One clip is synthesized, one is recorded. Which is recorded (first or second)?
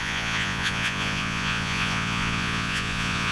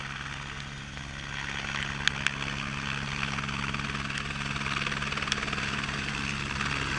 second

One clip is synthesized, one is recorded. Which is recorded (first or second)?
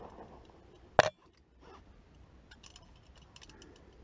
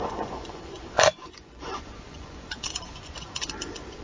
first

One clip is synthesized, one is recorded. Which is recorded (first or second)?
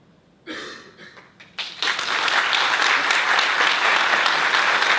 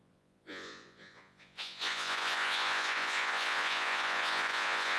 first